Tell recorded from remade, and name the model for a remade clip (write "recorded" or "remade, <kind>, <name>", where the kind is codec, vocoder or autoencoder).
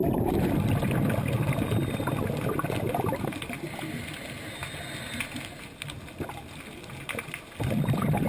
recorded